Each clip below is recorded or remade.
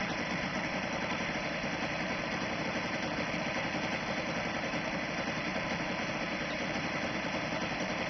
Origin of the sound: remade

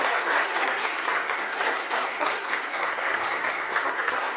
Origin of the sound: remade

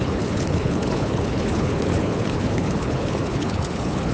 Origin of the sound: remade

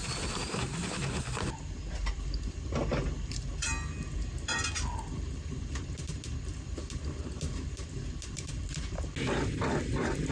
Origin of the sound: recorded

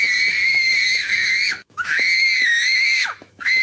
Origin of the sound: remade